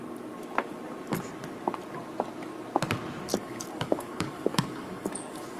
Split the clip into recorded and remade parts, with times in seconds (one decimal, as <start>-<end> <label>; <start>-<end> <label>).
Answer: 0.0-3.3 recorded; 3.3-5.6 remade